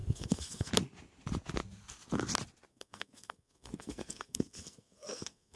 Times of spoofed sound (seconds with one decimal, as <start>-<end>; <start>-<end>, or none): 0.0-0.7; 2.7-5.6